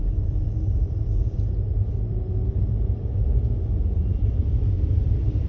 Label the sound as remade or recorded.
remade